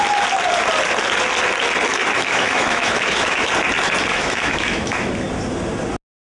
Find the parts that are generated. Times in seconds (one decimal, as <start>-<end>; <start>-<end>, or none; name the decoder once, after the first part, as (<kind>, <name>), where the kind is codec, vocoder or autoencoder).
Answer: 1.9-3.5 (autoencoder, DAC-VAE); 4.1-5.1